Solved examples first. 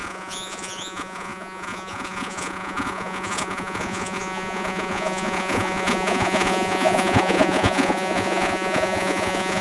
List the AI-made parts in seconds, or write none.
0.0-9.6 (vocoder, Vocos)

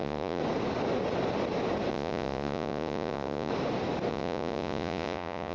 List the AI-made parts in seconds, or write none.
0.0-0.4 (vocoder, Vocos); 1.9-3.5; 4.1-5.5